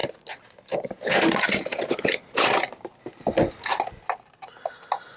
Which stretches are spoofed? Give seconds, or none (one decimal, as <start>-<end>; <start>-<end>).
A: none